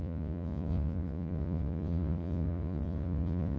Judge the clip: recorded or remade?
remade